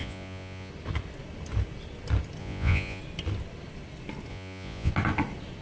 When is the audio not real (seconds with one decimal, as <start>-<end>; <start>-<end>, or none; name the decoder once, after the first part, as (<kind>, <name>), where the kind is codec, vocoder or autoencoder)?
0.0-0.7 (vocoder, Vocos); 2.4-3.0; 4.3-4.9